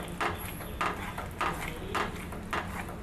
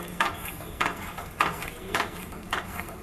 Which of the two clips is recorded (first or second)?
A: first